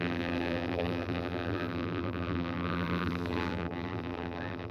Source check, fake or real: fake